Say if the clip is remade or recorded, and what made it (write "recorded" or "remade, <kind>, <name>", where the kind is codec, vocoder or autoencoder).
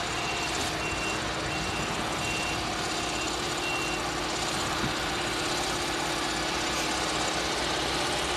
recorded